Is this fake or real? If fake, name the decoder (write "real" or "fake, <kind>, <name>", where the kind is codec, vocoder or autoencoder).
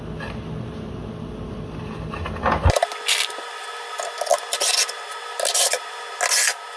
real